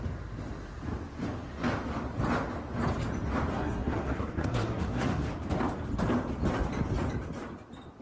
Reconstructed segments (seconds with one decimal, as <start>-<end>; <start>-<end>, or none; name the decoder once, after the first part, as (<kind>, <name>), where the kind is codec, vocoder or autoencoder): 3.5-5.3 (codec, SNAC)